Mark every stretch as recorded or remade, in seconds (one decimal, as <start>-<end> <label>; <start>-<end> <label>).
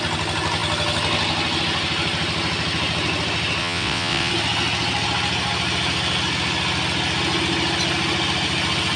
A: 0.0-3.6 recorded; 3.6-4.3 remade; 4.3-9.0 recorded